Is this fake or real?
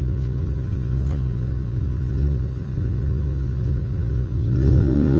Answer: fake